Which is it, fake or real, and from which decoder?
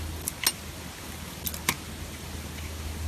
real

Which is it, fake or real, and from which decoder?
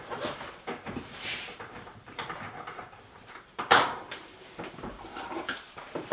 fake, vocoder, BigVGAN v2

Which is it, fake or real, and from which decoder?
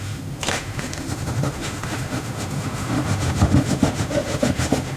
fake, autoencoder, DAC-VAE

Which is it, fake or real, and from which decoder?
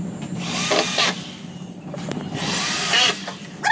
fake, vocoder, BigVGAN v2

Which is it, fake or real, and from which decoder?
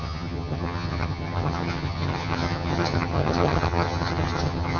fake, vocoder, HiFi-GAN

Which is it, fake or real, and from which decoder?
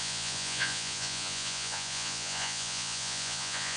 fake, vocoder, Vocos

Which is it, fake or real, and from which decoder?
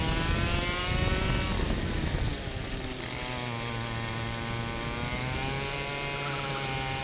real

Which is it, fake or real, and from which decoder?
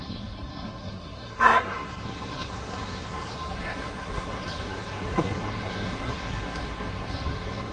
fake, codec, SNAC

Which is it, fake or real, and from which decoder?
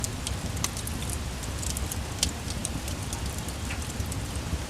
real